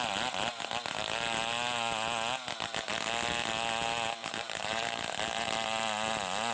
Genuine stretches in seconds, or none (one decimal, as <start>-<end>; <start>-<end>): 0.0-4.2; 5.5-6.5